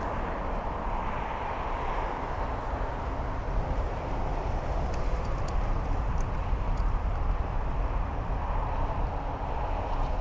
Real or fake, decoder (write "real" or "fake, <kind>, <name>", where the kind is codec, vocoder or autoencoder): real